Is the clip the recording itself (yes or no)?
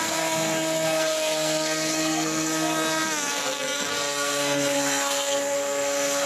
no